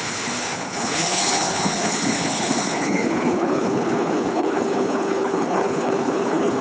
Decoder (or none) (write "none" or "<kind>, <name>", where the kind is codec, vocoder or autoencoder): codec, HILCodec